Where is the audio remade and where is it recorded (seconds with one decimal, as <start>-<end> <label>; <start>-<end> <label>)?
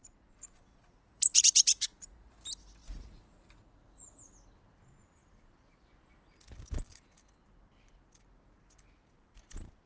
0.0-2.4 remade; 2.4-2.8 recorded; 2.8-4.3 remade; 4.3-9.9 recorded